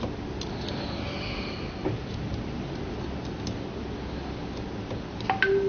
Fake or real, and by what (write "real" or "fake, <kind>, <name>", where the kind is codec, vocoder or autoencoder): real